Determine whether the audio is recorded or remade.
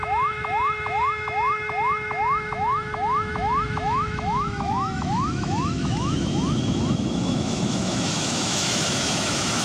remade